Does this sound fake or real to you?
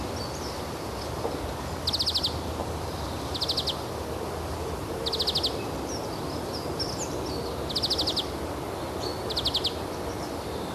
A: real